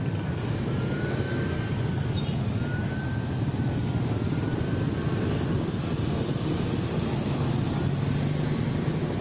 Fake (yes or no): no